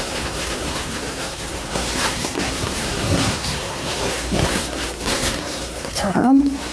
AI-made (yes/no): yes